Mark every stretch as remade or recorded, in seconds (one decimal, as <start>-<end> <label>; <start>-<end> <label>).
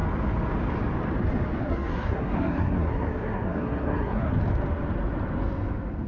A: 0.0-1.6 recorded; 1.6-4.3 remade; 4.3-6.1 recorded